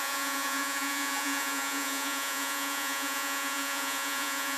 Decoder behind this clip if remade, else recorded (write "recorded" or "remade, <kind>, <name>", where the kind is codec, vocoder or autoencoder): remade, vocoder, Vocos